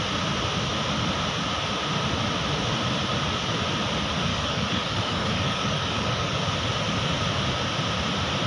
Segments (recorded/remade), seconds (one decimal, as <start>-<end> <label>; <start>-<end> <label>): 0.0-4.3 recorded; 4.3-6.4 remade; 6.4-8.5 recorded